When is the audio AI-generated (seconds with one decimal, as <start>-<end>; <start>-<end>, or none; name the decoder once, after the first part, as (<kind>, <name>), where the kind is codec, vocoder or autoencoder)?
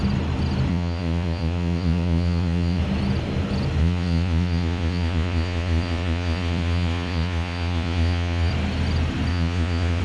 0.7-2.8 (vocoder, Vocos); 3.8-8.5; 9.3-10.0